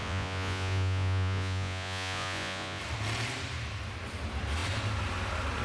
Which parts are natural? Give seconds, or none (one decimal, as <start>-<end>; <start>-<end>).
2.8-5.6